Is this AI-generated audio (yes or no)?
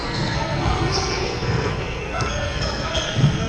yes